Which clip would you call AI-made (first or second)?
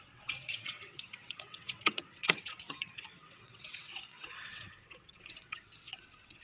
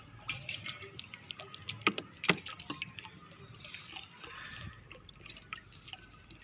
first